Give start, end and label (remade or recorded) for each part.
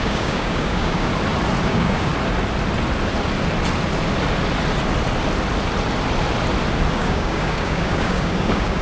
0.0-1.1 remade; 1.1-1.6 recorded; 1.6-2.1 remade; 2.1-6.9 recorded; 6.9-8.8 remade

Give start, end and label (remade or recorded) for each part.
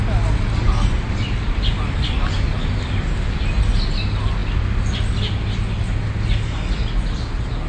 0.0-7.7 recorded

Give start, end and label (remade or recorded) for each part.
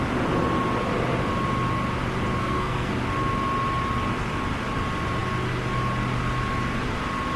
0.0-2.4 recorded; 2.4-2.9 remade; 2.9-7.4 recorded